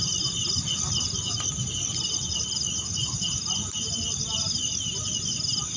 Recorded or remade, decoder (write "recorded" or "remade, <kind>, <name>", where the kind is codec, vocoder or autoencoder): recorded